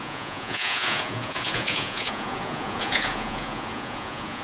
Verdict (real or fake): fake